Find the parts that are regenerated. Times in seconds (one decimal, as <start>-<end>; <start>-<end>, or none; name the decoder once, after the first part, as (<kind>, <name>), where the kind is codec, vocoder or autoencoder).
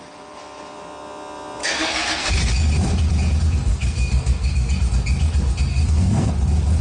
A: 1.6-2.3 (codec, SNAC); 3.7-4.7; 5.7-6.3